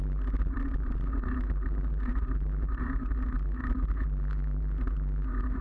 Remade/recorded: recorded